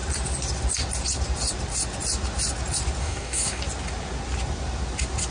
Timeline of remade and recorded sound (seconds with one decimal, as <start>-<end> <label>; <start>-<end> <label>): 0.0-3.0 recorded; 3.0-3.6 remade; 3.6-5.3 recorded